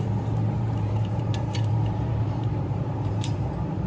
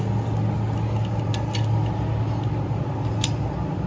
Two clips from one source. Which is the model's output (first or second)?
first